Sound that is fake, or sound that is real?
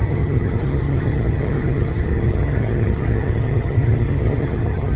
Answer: fake